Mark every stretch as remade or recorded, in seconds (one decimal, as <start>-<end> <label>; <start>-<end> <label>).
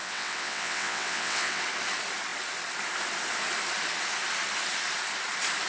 0.0-1.6 remade; 1.6-5.7 recorded